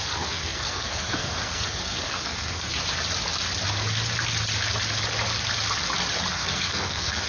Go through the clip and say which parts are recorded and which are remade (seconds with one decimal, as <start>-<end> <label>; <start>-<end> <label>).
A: 0.0-2.7 remade; 2.7-6.3 recorded; 6.3-7.3 remade